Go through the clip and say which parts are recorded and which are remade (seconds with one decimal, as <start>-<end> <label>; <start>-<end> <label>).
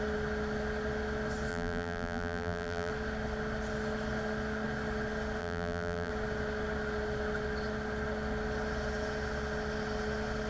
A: 0.0-1.5 recorded; 1.5-2.9 remade; 2.9-5.4 recorded; 5.4-6.1 remade; 6.1-10.5 recorded